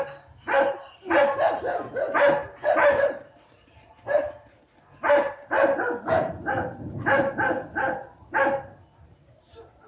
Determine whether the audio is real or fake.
fake